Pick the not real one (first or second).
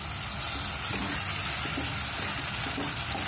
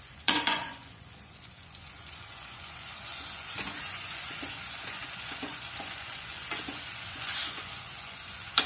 second